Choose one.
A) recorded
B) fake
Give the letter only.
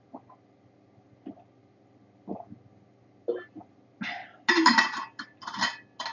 A